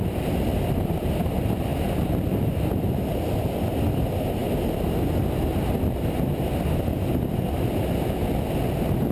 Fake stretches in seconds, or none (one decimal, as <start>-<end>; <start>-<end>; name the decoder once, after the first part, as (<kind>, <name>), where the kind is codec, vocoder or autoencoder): none